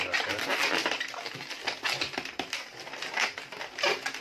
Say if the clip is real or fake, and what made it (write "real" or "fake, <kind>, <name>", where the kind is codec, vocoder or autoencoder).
real